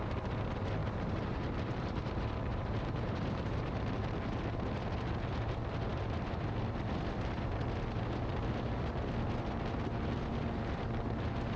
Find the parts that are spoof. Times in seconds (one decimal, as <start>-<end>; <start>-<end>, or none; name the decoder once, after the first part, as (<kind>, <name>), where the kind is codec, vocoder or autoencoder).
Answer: 0.8-2.0 (vocoder, BigVGAN v2); 2.5-4.2